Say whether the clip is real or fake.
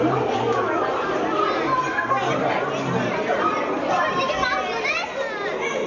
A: real